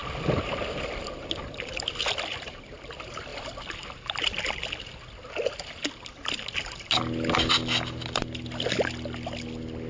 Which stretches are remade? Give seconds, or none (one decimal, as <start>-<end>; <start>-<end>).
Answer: none